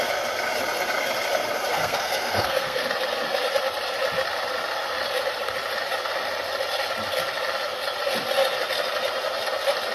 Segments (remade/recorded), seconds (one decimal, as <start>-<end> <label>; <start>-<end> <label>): 0.0-1.7 recorded; 1.7-2.8 remade; 2.8-9.9 recorded